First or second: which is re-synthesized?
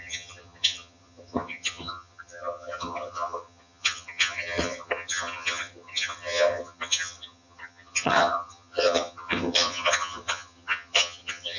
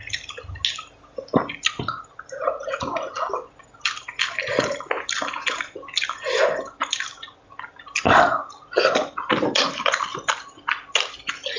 first